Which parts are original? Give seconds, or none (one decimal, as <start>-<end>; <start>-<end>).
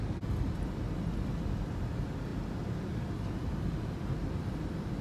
0.0-5.0